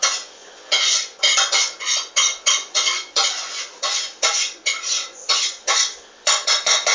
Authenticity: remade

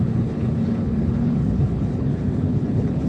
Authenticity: remade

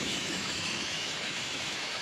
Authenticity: remade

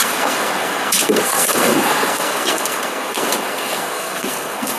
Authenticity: remade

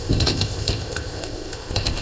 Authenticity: remade